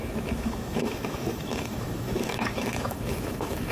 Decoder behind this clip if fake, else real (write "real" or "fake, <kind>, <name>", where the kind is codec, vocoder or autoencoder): fake, autoencoder, DAC-VAE